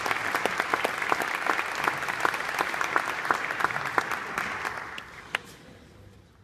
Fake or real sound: real